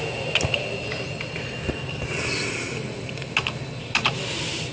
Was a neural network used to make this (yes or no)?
no